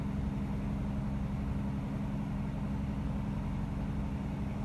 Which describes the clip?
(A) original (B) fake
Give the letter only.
A